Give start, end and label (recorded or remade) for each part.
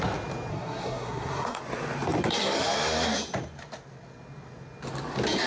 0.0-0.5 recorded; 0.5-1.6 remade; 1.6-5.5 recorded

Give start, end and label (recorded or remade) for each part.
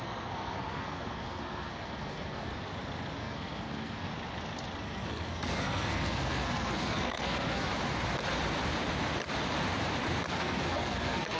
0.0-2.5 remade; 2.5-3.2 recorded; 3.2-4.1 remade; 4.1-4.8 recorded; 4.8-7.7 remade; 7.7-10.3 recorded; 10.3-11.4 remade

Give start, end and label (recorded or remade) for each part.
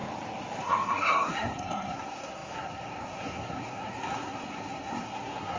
0.0-0.6 recorded; 0.6-5.6 remade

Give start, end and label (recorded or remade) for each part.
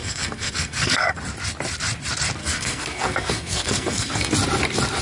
0.0-1.2 remade; 1.2-2.4 recorded; 2.4-4.3 remade; 4.3-5.0 recorded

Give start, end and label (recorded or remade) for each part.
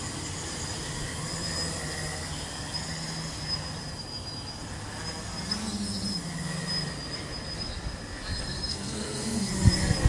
0.0-8.7 recorded; 8.7-9.5 remade; 9.5-10.1 recorded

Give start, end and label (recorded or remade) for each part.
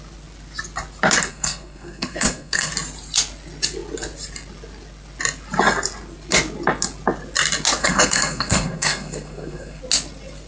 0.0-1.3 recorded; 1.3-2.7 remade; 2.7-7.8 recorded; 7.8-9.8 remade; 9.8-10.5 recorded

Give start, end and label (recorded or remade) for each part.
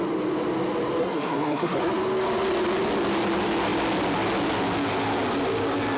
0.0-1.0 recorded; 1.0-1.9 remade; 1.9-6.0 recorded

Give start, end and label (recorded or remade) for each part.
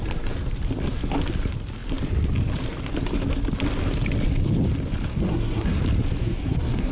0.0-5.1 recorded; 5.1-5.8 remade; 5.8-6.2 recorded; 6.2-6.9 remade